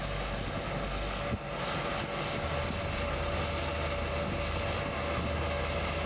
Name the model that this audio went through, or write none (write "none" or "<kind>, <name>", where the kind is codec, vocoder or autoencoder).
none